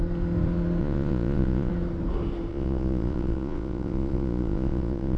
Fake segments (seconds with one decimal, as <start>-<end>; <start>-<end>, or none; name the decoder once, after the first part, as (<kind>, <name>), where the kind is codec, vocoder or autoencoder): 0.8-1.7 (vocoder, Vocos); 2.5-5.2